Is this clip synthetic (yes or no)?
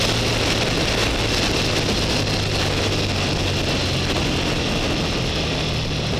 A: no